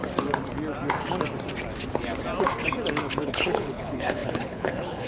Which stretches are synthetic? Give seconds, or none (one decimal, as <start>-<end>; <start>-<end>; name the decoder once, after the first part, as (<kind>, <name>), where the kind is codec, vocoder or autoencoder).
3.1-5.1 (codec, HILCodec)